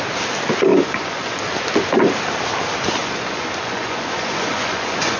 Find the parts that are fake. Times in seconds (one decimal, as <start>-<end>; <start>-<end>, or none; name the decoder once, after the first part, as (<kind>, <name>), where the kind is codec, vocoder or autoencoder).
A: 0.7-1.4 (vocoder, Vocos); 3.0-5.2